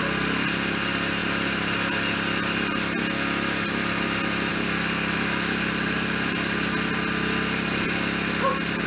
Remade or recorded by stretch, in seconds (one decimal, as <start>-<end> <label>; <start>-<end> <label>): 0.0-8.9 recorded